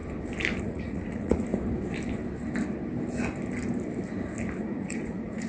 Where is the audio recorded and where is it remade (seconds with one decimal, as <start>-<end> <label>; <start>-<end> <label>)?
0.0-0.6 recorded; 0.6-1.5 remade; 1.5-4.6 recorded; 4.6-5.5 remade